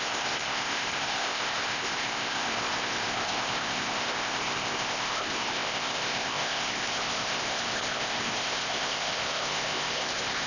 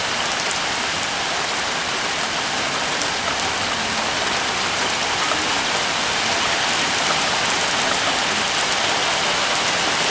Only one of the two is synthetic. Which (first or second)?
first